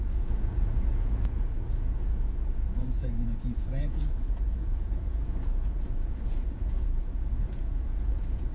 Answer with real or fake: fake